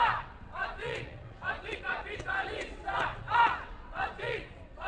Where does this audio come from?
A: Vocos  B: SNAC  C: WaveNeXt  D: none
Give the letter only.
C